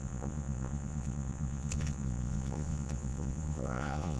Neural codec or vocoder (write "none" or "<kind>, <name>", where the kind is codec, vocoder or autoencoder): vocoder, Vocos